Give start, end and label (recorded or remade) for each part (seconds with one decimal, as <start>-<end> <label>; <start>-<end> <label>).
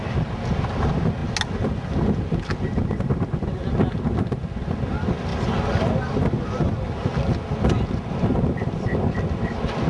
0.0-9.9 recorded